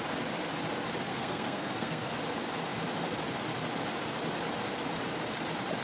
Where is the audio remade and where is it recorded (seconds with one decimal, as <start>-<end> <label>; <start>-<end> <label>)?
0.0-1.1 recorded; 1.1-2.1 remade; 2.1-5.8 recorded